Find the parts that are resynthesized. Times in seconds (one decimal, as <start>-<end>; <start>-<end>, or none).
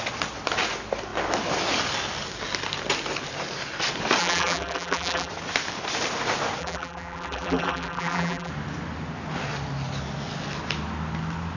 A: 4.2-5.3; 6.6-8.5